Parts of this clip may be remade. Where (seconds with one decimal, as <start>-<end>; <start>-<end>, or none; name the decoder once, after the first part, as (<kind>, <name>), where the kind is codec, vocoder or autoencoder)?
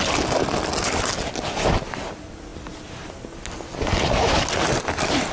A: none